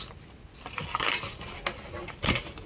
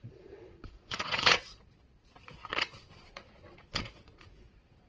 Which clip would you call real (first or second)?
first